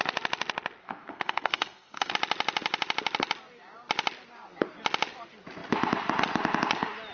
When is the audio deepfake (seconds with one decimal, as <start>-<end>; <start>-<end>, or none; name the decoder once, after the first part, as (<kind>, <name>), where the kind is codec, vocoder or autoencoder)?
0.8-2.1 (codec, SNAC)